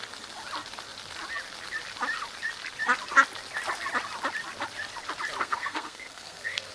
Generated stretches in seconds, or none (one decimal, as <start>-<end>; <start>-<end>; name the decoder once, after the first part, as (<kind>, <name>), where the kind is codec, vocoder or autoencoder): 5.4-6.7 (codec, SNAC)